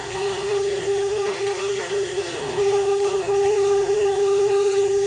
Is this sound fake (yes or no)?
yes